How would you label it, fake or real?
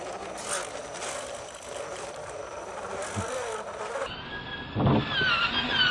real